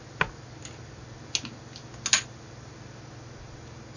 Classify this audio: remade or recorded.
recorded